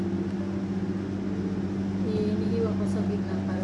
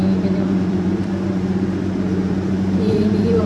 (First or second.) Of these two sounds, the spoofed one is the second